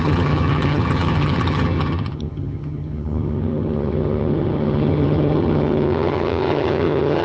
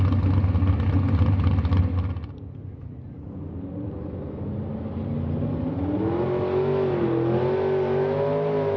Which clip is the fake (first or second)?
first